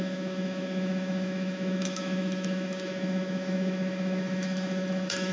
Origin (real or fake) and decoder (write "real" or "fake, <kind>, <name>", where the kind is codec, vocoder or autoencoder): fake, autoencoder, DAC-VAE